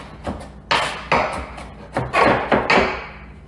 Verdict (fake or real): real